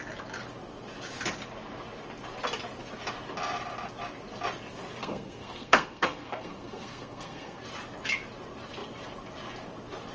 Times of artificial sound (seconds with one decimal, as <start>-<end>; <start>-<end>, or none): 5.0-7.6